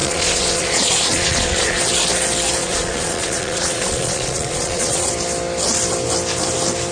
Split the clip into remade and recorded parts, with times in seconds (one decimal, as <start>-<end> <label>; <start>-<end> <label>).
0.0-1.8 remade; 1.8-2.6 recorded; 2.6-5.1 remade; 5.1-6.9 recorded